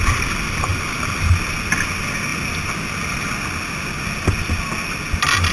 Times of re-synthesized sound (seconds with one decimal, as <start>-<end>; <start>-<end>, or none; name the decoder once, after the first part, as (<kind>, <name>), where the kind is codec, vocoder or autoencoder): none